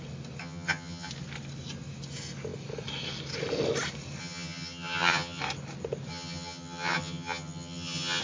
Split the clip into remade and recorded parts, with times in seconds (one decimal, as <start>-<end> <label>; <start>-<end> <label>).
0.0-0.4 recorded; 0.4-1.1 remade; 1.1-4.2 recorded; 4.2-5.4 remade; 5.4-6.1 recorded; 6.1-8.2 remade